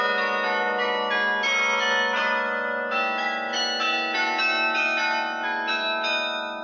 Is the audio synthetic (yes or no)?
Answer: no